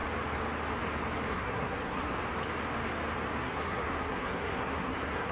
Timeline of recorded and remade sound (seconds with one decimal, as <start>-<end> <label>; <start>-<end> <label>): 0.0-1.3 recorded; 1.3-2.2 remade; 2.2-3.4 recorded; 3.4-5.3 remade